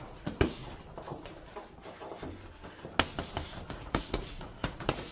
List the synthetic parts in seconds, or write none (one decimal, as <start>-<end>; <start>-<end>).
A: 0.0-0.6; 3.7-5.1